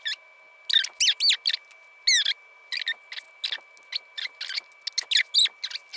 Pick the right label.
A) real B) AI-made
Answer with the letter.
A